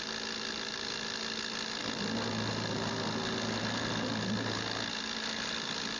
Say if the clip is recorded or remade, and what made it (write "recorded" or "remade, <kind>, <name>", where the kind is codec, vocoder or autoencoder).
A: recorded